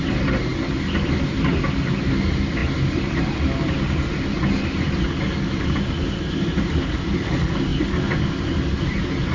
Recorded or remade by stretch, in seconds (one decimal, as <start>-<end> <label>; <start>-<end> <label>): 0.0-9.3 recorded

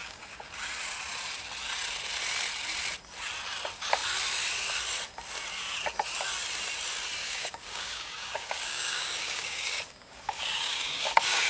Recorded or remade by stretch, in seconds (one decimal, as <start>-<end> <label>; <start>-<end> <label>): 0.0-0.5 remade; 0.5-7.2 recorded; 7.2-11.5 remade

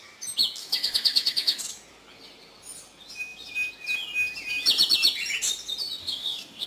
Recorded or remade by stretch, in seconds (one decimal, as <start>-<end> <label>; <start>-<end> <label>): 0.0-0.6 recorded; 0.6-1.7 remade; 1.7-6.0 recorded; 6.0-6.7 remade

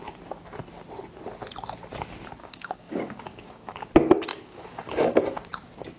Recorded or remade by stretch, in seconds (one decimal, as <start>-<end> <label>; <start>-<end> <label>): 0.0-2.4 recorded; 2.4-3.9 remade; 3.9-4.3 recorded; 4.3-5.2 remade; 5.2-6.0 recorded

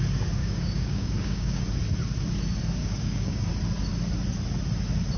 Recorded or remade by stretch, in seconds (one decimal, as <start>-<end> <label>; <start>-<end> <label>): 0.0-0.4 recorded; 0.4-1.6 remade; 1.6-2.8 recorded; 2.8-3.5 remade; 3.5-5.2 recorded

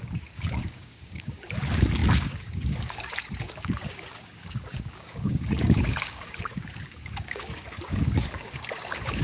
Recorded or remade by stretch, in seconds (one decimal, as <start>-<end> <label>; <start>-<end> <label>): 0.0-9.2 remade